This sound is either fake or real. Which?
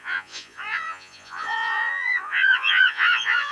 fake